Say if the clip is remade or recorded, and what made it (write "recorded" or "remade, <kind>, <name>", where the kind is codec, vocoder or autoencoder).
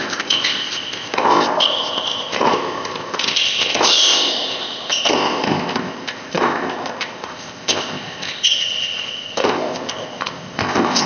remade, codec, ZipCodec